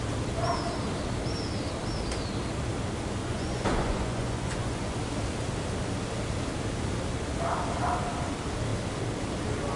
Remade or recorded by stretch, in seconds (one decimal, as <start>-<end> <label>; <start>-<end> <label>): 0.0-3.2 recorded; 3.2-5.0 remade; 5.0-9.8 recorded